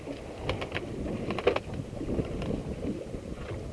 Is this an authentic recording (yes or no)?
yes